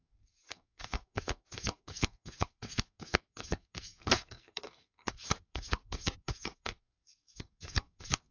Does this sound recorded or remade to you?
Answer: remade